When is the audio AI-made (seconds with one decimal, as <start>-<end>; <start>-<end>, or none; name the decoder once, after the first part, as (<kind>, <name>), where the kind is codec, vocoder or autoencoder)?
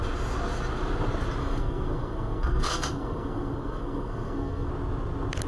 1.4-4.7 (codec, SNAC)